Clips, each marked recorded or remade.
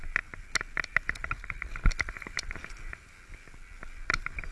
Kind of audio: recorded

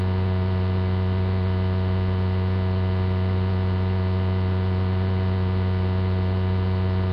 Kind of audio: recorded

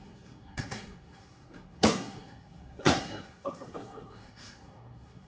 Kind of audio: remade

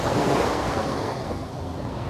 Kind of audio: remade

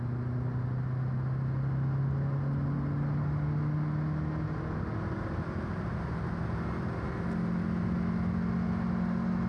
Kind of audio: recorded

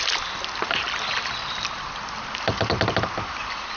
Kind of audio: recorded